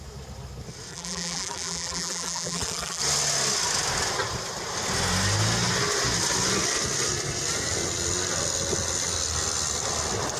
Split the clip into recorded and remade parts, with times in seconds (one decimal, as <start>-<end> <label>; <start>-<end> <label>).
0.0-0.9 recorded; 0.9-3.0 remade; 3.0-10.4 recorded